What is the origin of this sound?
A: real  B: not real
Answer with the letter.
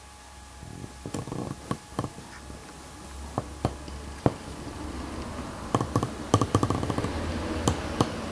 A